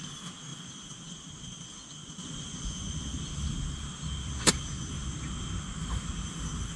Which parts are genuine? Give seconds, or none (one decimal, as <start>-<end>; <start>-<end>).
0.0-1.8; 3.0-6.8